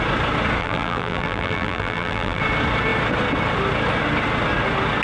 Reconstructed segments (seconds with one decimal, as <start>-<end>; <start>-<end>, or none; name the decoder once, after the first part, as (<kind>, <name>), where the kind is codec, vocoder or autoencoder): 0.6-2.4 (vocoder, BigVGAN v2)